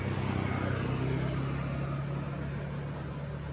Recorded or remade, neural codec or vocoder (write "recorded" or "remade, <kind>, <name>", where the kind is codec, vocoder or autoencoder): recorded